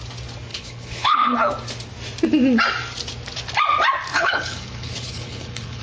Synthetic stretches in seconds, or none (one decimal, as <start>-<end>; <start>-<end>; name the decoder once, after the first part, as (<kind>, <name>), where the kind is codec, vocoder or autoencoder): 0.5-1.5 (codec, HILCodec); 4.1-5.8